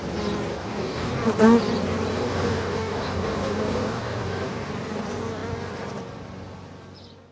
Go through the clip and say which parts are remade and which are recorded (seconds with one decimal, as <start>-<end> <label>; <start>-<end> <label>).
0.0-0.5 recorded; 0.5-1.1 remade; 1.1-2.1 recorded; 2.1-4.7 remade; 4.7-7.3 recorded